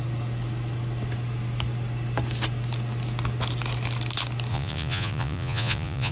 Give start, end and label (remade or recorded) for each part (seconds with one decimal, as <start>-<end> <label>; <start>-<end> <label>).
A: 0.0-4.5 recorded; 4.5-6.1 remade